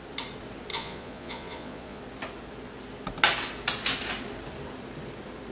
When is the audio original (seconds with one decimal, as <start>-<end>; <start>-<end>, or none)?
0.0-0.7; 2.0-5.5